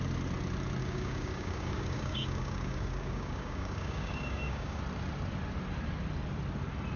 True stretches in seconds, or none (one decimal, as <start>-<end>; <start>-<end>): 0.0-0.8; 4.8-7.0